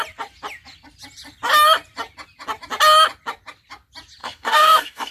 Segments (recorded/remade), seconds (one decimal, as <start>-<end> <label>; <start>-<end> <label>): 0.0-4.2 recorded; 4.2-5.1 remade

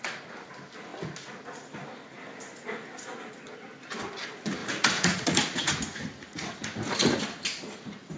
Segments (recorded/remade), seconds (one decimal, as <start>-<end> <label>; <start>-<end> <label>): 0.0-4.6 recorded; 4.6-7.2 remade; 7.2-8.2 recorded